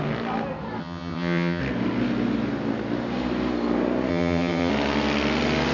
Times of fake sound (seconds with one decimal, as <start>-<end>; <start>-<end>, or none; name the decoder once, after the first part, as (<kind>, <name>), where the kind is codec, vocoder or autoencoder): 0.8-1.6 (vocoder, HiFi-GAN); 4.1-4.7